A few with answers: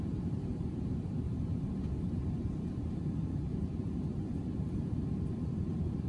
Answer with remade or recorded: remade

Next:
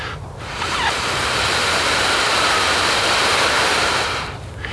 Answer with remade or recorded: remade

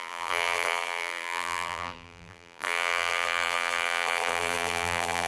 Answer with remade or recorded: remade